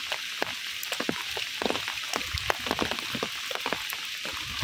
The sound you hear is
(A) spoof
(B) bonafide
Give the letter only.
B